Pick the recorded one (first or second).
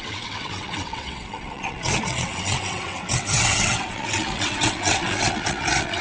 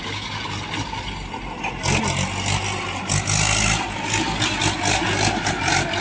second